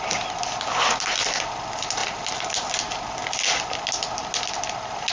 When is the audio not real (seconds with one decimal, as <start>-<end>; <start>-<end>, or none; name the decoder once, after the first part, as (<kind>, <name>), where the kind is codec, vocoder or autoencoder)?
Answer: none